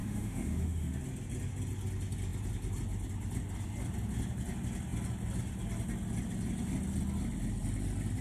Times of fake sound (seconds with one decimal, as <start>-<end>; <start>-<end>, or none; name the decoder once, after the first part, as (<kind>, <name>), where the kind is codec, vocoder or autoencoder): 0.0-1.0 (autoencoder, DAC-VAE)